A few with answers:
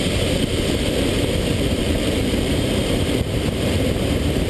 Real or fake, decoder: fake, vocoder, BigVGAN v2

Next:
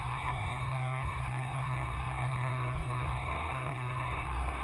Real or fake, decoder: fake, codec, SNAC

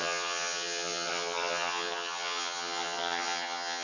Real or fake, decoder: fake, vocoder, HiFi-GAN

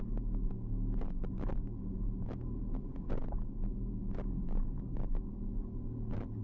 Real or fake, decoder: real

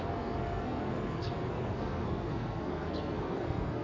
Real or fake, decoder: fake, codec, SNAC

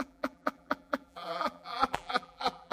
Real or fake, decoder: fake, vocoder, BigVGAN v2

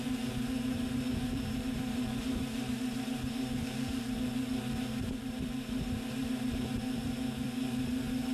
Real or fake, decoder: fake, vocoder, BigVGAN v2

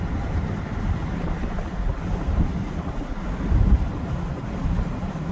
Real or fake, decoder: fake, vocoder, BigVGAN v2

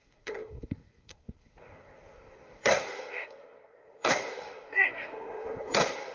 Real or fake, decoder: fake, codec, SNAC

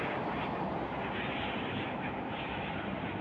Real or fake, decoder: real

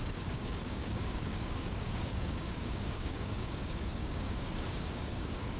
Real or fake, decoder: fake, codec, DAC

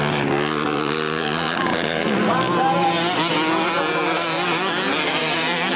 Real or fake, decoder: real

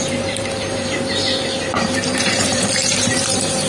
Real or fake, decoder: fake, vocoder, BigVGAN v2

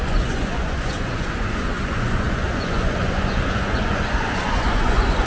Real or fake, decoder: fake, vocoder, Vocos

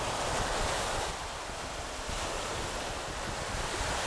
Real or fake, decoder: real